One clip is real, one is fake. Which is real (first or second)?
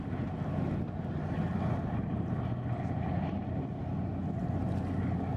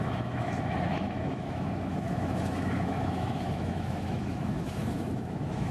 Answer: first